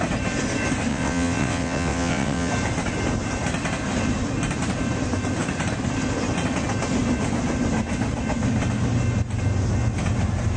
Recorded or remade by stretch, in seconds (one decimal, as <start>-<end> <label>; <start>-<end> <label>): 0.0-0.9 recorded; 0.9-2.5 remade; 2.5-10.6 recorded